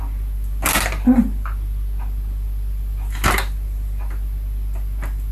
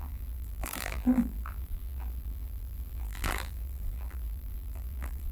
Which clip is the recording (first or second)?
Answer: first